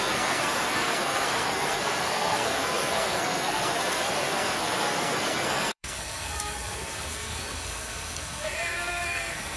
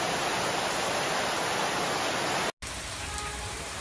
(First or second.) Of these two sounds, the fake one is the first